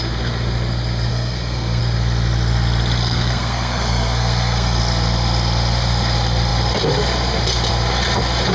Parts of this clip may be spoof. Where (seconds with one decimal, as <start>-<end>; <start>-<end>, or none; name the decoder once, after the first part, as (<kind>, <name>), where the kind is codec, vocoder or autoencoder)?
1.1-1.8 (codec, SNAC); 3.0-4.8